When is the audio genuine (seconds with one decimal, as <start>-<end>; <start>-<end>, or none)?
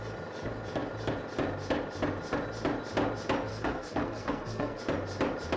0.0-3.5; 4.8-5.6